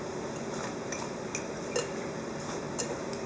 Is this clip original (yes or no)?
yes